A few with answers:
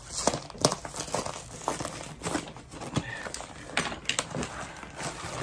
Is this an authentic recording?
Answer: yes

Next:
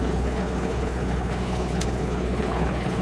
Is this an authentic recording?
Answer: no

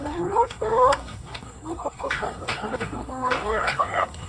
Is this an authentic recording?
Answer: no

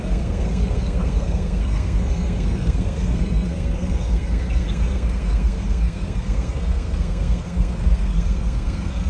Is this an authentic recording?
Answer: no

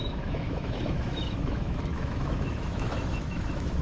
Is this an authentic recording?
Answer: no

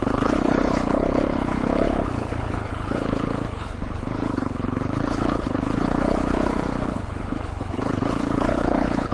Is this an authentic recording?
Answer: no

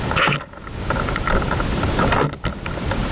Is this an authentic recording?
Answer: yes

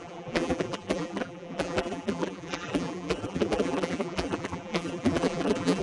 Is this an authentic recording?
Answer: no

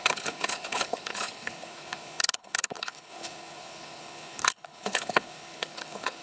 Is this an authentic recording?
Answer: no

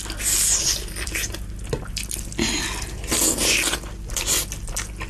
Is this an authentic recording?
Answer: yes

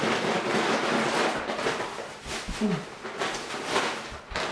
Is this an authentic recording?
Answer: yes